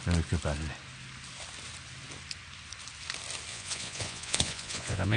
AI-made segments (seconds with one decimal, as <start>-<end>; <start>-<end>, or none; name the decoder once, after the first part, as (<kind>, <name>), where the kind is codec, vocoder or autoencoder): 3.5-5.2 (vocoder, Vocos)